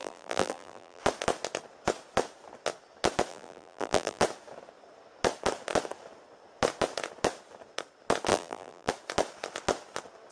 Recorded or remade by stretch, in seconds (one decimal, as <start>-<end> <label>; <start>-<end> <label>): 0.0-1.0 remade; 1.0-3.3 recorded; 3.3-4.2 remade; 4.2-8.3 recorded; 8.3-8.9 remade; 8.9-10.3 recorded